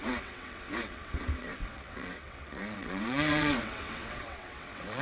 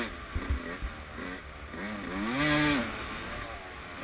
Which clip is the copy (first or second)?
first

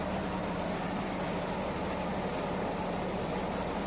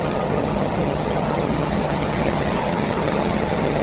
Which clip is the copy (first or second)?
second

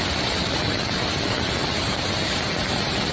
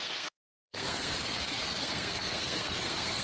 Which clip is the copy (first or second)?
second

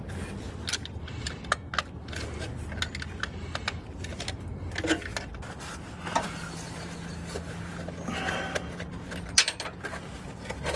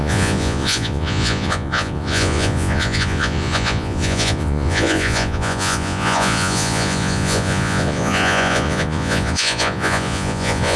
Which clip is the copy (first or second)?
second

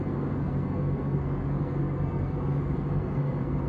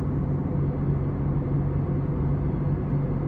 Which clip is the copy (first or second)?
first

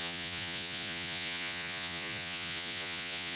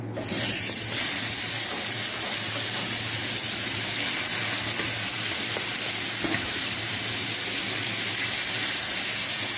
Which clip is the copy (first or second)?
first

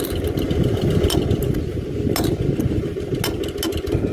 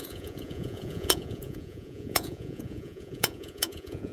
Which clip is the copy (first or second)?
second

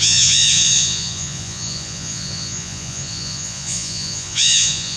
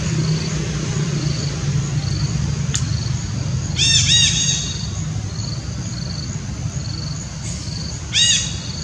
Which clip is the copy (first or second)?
first